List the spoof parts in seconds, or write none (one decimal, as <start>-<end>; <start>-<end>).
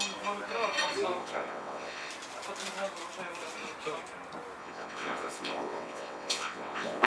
1.2-2.1; 4.6-7.1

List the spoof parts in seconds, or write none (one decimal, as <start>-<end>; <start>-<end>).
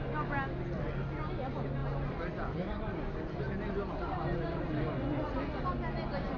none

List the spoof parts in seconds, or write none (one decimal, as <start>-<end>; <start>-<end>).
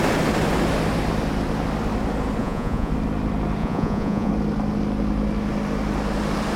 2.4-2.9; 3.6-4.3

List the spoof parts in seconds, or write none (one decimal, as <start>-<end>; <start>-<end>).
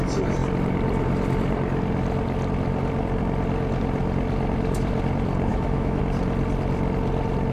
5.5-6.0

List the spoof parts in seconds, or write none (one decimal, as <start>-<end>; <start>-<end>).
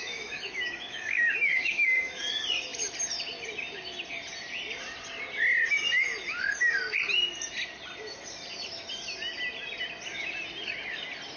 0.0-2.2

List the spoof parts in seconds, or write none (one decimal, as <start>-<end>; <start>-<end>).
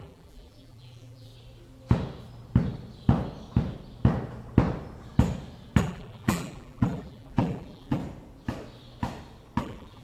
0.0-1.3; 5.8-8.0; 9.6-10.0